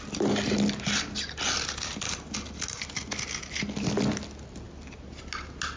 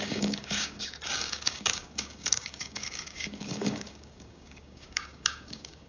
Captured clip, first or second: first